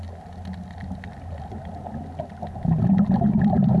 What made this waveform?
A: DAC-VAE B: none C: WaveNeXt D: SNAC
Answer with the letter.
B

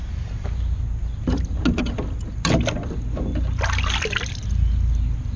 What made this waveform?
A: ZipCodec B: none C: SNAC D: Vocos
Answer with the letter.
B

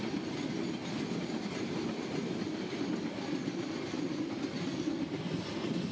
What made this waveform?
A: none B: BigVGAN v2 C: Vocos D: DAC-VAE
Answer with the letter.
A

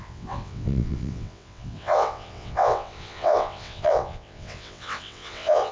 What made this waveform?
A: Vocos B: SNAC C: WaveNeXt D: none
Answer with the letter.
C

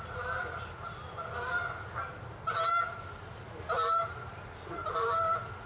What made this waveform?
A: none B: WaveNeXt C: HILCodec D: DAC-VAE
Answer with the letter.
A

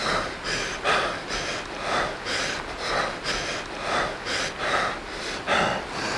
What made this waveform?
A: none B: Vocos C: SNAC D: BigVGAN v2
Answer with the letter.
A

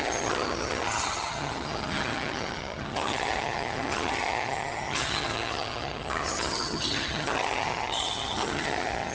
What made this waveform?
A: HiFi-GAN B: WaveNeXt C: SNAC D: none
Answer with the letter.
A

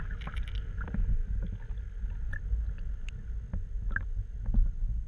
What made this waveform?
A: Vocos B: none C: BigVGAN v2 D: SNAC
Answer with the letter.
B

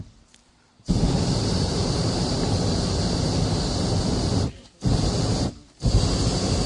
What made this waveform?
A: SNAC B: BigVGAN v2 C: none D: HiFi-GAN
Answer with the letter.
B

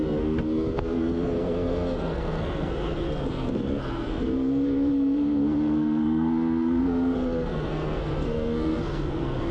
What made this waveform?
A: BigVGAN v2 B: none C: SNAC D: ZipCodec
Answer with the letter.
C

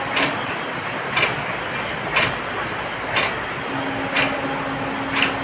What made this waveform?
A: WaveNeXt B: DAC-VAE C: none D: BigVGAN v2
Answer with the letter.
C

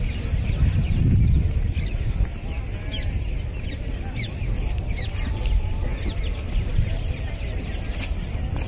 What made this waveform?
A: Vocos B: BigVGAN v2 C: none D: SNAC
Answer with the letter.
C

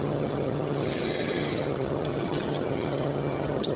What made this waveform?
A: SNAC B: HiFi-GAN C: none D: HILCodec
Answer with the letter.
B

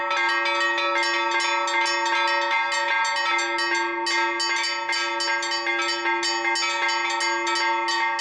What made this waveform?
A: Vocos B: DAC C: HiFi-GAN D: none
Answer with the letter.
D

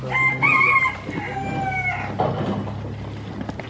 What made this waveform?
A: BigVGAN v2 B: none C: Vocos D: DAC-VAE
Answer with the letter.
B